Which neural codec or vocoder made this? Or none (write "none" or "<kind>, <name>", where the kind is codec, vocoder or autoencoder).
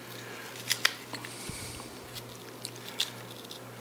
none